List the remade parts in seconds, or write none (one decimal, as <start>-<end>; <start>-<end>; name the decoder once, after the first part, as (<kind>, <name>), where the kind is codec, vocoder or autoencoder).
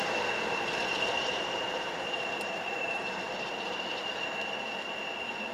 1.2-3.5 (vocoder, BigVGAN v2)